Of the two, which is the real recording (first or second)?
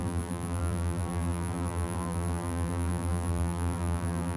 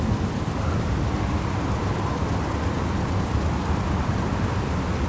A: second